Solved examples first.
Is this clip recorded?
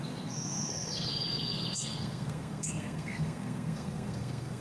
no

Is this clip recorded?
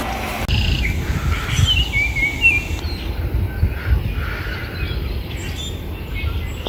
yes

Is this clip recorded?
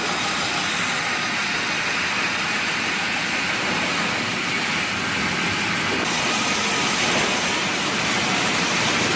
yes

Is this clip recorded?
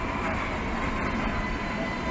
yes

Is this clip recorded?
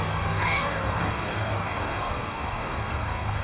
no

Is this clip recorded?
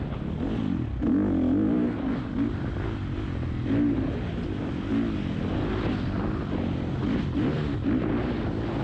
yes